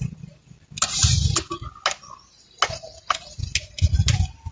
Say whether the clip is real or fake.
real